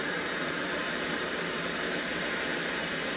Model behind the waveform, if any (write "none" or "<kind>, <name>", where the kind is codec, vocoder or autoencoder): vocoder, BigVGAN v2